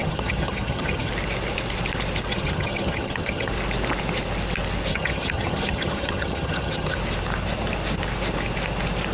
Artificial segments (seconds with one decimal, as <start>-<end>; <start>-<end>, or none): 0.0-1.1; 2.3-3.5; 4.9-7.0